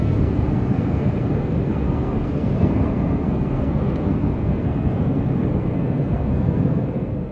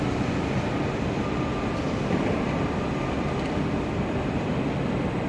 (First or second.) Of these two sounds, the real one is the second